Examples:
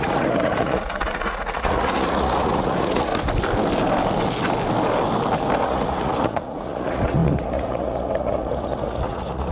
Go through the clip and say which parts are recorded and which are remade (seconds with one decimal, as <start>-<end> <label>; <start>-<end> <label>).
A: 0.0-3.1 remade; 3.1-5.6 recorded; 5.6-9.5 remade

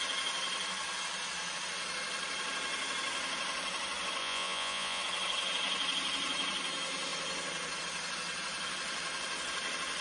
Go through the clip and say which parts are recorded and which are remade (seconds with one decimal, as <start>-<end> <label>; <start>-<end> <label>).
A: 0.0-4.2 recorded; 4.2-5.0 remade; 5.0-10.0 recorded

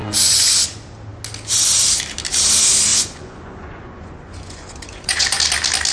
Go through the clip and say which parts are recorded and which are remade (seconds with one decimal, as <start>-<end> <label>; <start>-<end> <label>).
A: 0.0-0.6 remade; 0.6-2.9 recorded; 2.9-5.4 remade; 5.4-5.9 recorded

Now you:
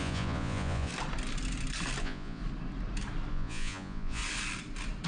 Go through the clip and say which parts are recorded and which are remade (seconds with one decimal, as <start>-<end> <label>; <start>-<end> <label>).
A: 0.0-0.9 remade; 0.9-2.0 recorded; 2.0-2.4 remade; 2.4-3.3 recorded; 3.3-4.2 remade; 4.2-5.1 recorded